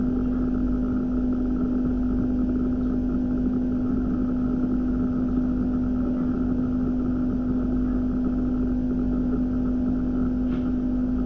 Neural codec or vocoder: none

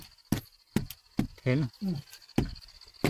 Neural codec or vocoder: none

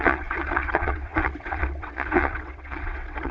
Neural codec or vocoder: vocoder, WaveNeXt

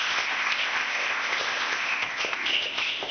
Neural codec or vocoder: codec, ZipCodec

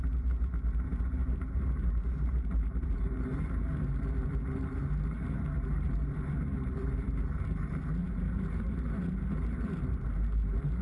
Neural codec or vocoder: vocoder, BigVGAN v2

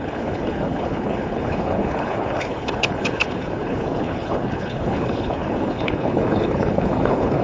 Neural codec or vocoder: codec, HILCodec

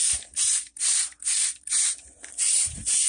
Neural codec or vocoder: vocoder, BigVGAN v2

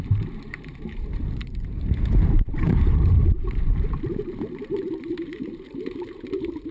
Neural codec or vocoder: vocoder, BigVGAN v2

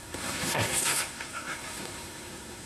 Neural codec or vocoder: codec, SNAC